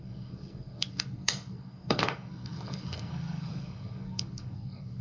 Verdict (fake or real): fake